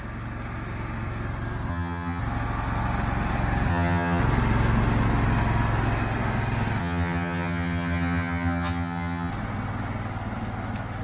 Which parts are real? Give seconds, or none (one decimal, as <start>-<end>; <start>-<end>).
0.0-1.7; 2.2-3.7; 4.2-6.8; 9.3-11.0